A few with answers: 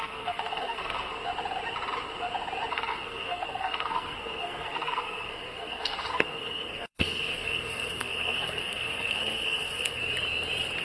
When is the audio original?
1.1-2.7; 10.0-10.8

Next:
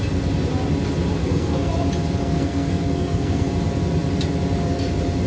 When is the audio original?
0.0-1.2; 1.7-2.2; 3.5-5.3

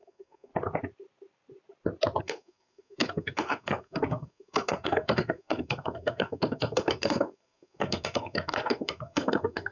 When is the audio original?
0.5-2.2